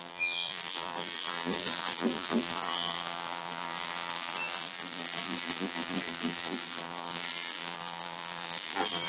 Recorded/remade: remade